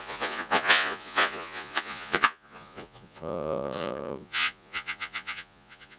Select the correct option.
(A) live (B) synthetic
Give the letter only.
B